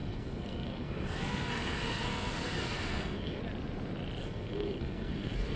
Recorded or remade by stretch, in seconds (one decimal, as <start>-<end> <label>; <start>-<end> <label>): 0.0-3.4 remade; 3.4-4.2 recorded; 4.2-5.6 remade

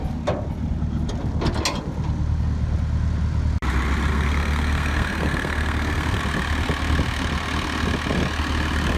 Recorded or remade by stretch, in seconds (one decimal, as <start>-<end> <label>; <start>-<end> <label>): 0.0-4.1 recorded; 4.1-6.2 remade; 6.2-9.0 recorded

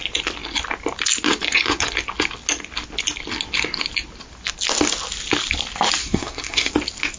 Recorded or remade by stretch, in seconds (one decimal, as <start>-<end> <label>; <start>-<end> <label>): 0.0-6.0 recorded; 6.0-6.7 remade; 6.7-7.2 recorded

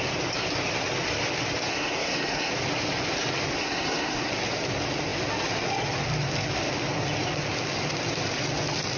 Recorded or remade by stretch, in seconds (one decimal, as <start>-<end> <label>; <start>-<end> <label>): 0.0-1.7 recorded; 1.7-2.5 remade; 2.5-3.6 recorded; 3.6-4.3 remade; 4.3-9.0 recorded

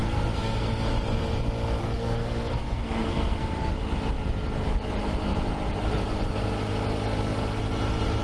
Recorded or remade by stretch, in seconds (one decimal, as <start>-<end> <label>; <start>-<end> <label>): 0.0-0.9 remade; 0.9-1.8 recorded; 1.8-3.7 remade; 3.7-8.2 recorded

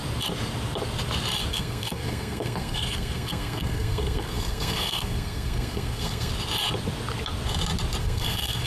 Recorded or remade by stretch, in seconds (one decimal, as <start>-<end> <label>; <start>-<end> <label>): 0.0-1.5 recorded; 1.5-6.3 remade; 6.3-8.0 recorded; 8.0-8.7 remade

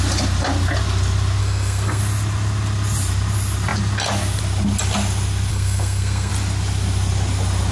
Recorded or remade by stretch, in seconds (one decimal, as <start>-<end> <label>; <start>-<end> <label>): 0.0-1.4 recorded; 1.4-2.0 remade; 2.0-5.5 recorded; 5.5-6.3 remade; 6.3-7.7 recorded

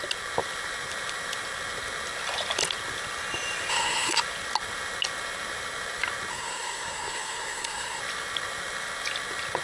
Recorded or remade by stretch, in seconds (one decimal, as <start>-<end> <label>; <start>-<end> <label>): 0.0-3.7 recorded; 3.7-4.2 remade; 4.2-6.3 recorded; 6.3-8.0 remade; 8.0-9.6 recorded